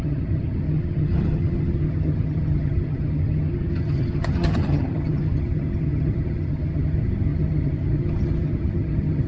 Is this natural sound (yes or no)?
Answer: no